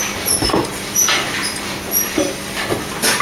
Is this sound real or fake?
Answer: fake